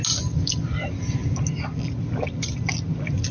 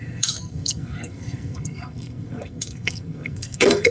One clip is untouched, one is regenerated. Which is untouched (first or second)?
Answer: first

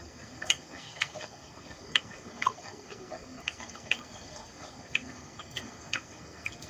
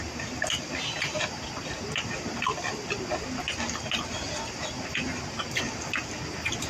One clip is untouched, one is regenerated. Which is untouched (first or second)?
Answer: second